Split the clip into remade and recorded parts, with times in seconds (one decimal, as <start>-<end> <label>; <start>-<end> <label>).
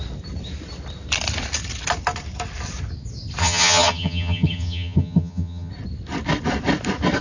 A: 0.0-3.4 recorded; 3.4-5.7 remade; 5.7-7.2 recorded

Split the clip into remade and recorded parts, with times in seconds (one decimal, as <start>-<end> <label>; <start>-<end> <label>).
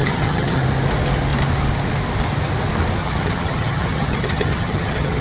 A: 0.0-0.6 remade; 0.6-3.0 recorded; 3.0-5.2 remade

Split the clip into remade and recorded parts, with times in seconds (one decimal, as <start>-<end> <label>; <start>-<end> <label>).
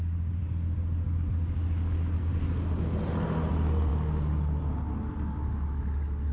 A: 0.0-6.3 recorded